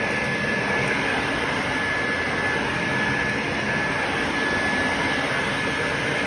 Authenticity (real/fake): real